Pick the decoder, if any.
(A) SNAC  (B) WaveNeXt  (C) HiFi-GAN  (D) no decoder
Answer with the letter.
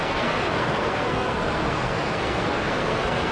A